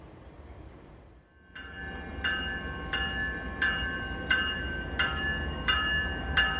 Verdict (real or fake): real